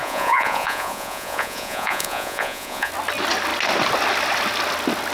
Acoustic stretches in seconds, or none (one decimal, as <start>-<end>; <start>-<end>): 2.9-5.1